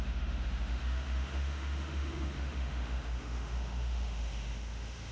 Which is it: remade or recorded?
remade